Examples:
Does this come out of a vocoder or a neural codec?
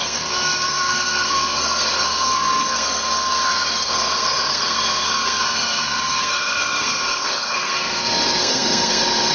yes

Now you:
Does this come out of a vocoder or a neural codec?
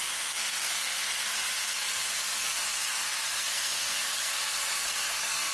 yes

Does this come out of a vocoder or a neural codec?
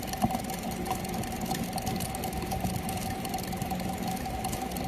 no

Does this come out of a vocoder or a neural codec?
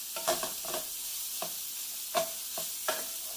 no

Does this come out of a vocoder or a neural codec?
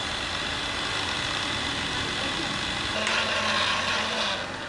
no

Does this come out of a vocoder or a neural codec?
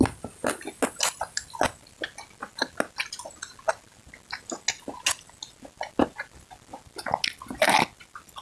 no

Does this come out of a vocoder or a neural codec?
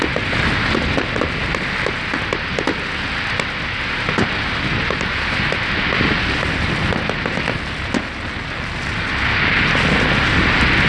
no